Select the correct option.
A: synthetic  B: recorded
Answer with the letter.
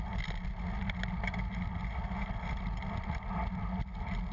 B